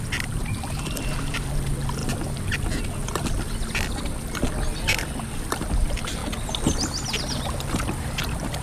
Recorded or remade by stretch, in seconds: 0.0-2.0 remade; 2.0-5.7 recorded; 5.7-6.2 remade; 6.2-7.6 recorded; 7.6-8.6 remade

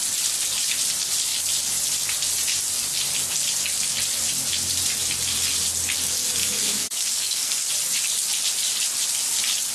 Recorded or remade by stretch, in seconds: 0.0-6.4 recorded; 6.4-7.7 remade; 7.7-9.7 recorded

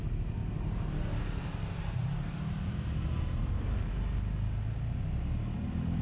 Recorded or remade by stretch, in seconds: 0.0-0.4 recorded; 0.4-3.9 remade; 3.9-6.0 recorded

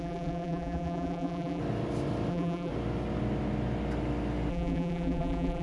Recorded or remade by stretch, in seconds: 0.0-1.6 remade; 1.6-2.3 recorded; 2.3-2.7 remade; 2.7-4.5 recorded; 4.5-5.6 remade

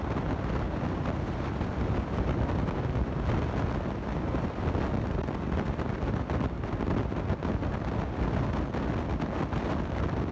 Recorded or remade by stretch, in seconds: 0.0-10.3 recorded